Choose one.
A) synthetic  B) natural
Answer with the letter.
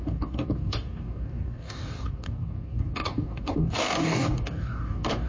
A